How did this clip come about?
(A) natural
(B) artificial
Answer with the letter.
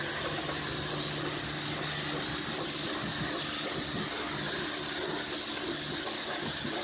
A